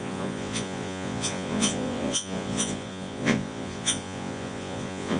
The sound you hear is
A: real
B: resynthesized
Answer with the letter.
B